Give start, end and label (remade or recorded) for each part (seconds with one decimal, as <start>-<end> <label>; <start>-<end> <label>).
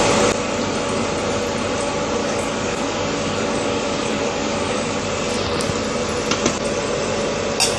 0.0-2.2 recorded; 2.2-5.0 remade; 5.0-7.8 recorded